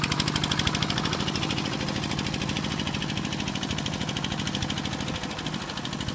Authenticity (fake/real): real